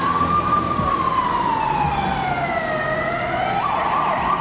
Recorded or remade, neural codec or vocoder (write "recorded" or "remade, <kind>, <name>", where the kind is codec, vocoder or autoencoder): recorded